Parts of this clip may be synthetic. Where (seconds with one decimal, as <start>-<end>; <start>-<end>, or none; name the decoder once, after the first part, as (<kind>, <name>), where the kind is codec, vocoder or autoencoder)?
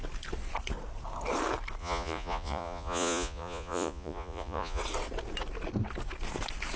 1.8-4.8 (vocoder, Vocos)